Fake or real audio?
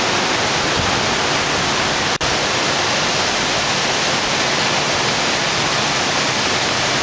real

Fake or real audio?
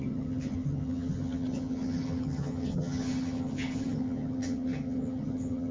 fake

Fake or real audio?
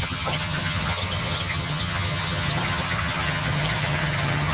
fake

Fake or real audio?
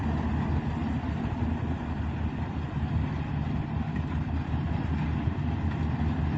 real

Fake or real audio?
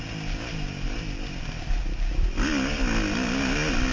real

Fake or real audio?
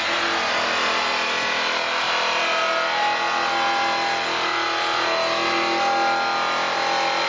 real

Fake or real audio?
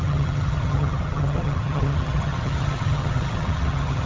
fake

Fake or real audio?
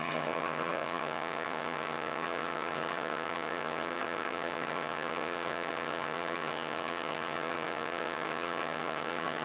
fake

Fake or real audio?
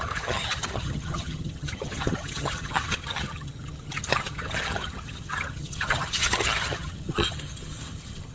fake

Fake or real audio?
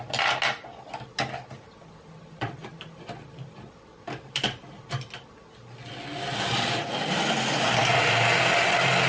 real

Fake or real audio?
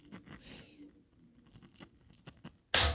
real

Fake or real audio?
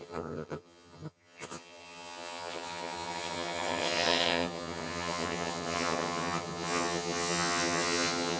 fake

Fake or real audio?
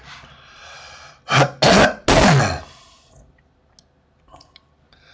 real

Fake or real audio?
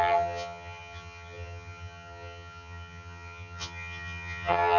fake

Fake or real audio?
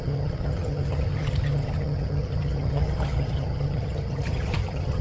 fake